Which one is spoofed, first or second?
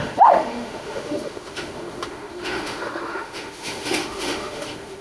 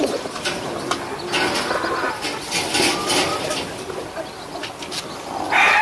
first